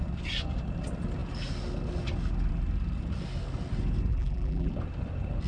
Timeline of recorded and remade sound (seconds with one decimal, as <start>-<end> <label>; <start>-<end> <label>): 0.0-4.1 recorded; 4.1-4.7 remade; 4.7-5.5 recorded